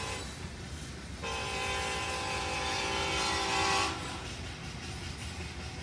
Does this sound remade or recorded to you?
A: recorded